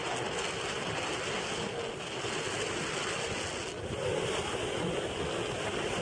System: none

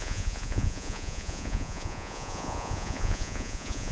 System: vocoder, Vocos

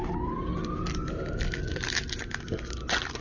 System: none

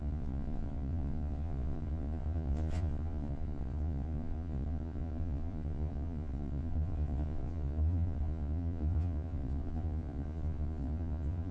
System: vocoder, Vocos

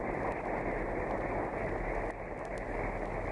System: none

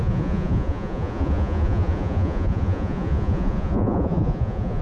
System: vocoder, Vocos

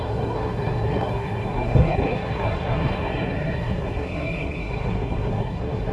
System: codec, SNAC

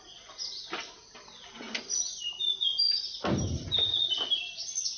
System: none